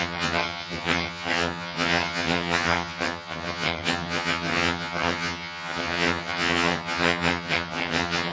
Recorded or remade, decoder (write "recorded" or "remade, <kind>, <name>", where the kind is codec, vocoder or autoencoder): remade, vocoder, HiFi-GAN